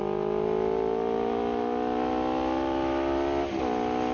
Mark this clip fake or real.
real